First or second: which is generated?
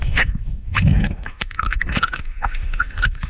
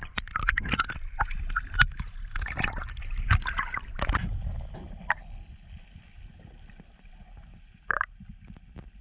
first